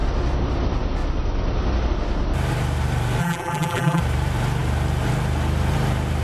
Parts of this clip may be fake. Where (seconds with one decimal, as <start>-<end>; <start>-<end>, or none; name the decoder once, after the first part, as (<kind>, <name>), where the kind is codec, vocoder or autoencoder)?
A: 3.2-4.0 (vocoder, BigVGAN v2)